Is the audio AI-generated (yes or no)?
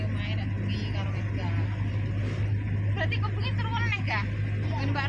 no